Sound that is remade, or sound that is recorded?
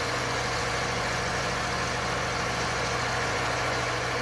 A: remade